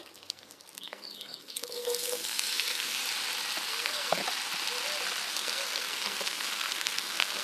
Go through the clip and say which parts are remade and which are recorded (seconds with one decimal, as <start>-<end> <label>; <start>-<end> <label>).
0.0-3.0 remade; 3.0-3.7 recorded; 3.7-4.2 remade; 4.2-5.3 recorded; 5.3-7.4 remade